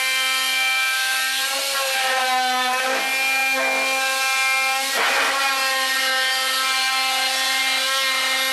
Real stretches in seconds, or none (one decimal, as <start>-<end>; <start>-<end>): 0.0-8.5